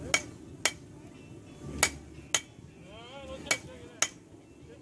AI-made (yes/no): no